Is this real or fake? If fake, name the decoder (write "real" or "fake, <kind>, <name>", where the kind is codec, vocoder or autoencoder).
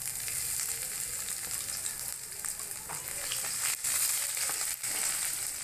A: real